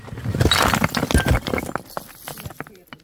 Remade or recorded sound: recorded